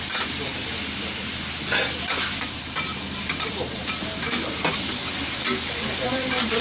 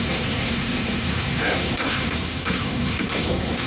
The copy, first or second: second